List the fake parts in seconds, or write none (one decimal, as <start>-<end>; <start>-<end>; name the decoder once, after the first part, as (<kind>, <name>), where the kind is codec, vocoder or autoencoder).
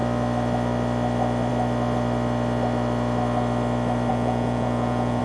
4.1-5.2 (vocoder, Vocos)